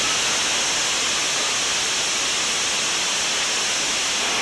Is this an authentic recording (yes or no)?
yes